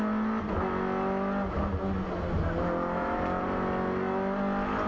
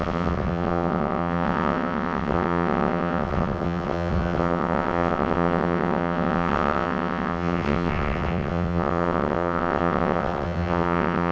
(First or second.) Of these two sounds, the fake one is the second